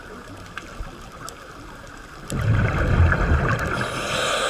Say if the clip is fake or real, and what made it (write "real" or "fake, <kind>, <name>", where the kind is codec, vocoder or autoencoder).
real